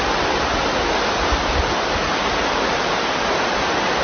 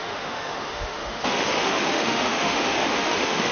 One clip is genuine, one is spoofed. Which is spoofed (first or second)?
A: second